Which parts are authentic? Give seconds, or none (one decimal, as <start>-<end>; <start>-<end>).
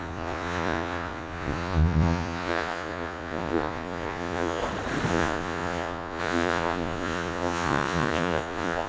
4.6-5.1